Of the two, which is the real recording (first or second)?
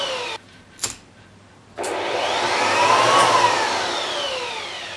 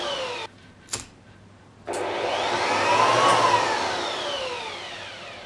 second